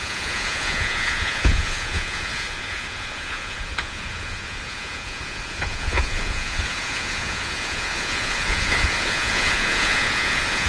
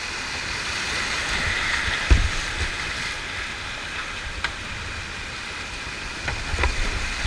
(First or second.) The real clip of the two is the second